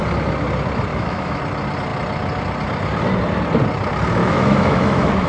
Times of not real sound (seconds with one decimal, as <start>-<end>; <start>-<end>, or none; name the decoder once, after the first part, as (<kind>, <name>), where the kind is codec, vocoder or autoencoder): 0.9-1.4 (autoencoder, DAC-VAE); 4.2-5.3

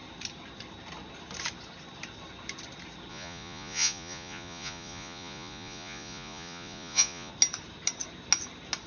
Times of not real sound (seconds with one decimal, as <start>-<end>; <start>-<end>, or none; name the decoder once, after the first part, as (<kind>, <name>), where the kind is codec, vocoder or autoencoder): 3.1-7.3 (vocoder, Vocos)

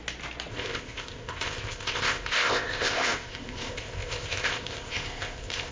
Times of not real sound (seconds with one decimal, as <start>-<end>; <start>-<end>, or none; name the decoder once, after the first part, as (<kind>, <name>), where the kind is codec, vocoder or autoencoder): 0.5-5.7 (codec, ZipCodec)

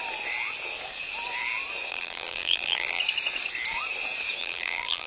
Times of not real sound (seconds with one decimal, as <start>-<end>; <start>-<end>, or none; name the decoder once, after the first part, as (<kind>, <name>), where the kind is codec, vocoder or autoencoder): 1.9-3.0 (vocoder, BigVGAN v2); 4.4-5.1

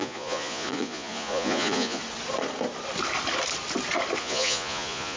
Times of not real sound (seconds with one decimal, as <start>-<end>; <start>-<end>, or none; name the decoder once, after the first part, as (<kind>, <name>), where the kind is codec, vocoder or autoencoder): 0.0-2.0 (vocoder, Vocos); 4.2-5.2

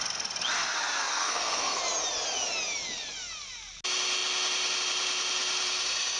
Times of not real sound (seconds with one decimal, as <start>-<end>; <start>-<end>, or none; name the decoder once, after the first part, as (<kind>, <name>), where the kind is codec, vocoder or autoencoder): 1.1-1.8 (codec, SNAC)